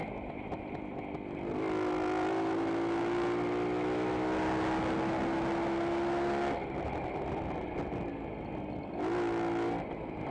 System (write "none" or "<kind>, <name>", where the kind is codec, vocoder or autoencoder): none